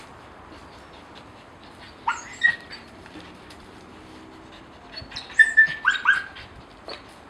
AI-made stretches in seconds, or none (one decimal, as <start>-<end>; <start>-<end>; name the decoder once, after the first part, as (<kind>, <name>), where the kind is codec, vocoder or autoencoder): none